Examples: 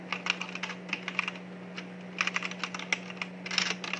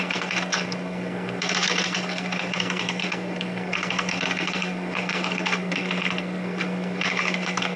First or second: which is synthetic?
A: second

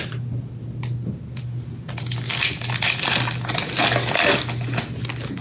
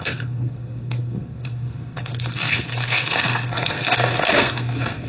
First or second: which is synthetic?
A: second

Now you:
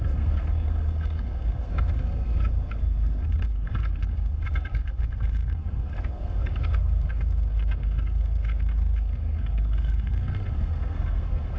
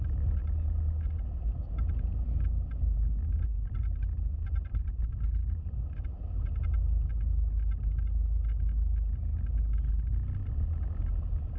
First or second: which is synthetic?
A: first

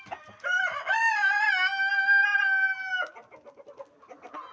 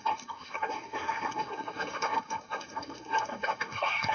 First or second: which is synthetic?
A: second